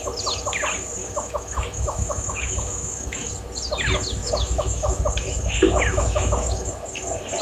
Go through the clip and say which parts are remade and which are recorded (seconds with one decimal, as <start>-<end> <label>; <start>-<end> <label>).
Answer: 0.0-1.0 recorded; 1.0-3.3 remade; 3.3-4.2 recorded; 4.2-5.0 remade; 5.0-5.9 recorded; 5.9-6.7 remade; 6.7-7.4 recorded